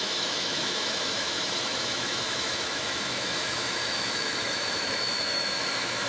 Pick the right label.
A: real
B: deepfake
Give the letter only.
B